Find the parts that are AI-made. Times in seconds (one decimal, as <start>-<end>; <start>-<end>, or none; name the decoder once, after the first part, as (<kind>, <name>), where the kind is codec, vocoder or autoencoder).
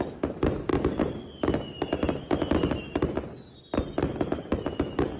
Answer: none